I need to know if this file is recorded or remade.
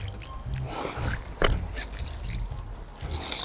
recorded